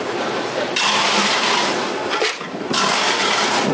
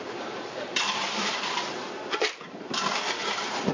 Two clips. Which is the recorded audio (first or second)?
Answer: first